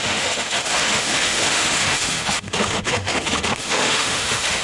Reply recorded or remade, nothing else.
remade